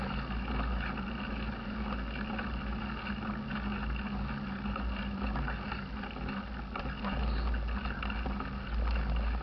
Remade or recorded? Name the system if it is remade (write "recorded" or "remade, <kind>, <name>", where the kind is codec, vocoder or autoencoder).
recorded